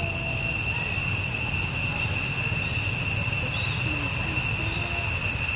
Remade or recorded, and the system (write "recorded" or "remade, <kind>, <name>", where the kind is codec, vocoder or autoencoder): recorded